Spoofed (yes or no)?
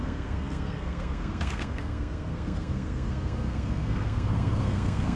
yes